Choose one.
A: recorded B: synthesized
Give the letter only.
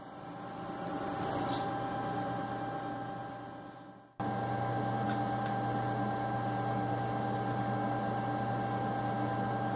A